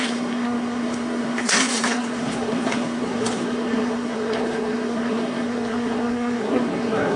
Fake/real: fake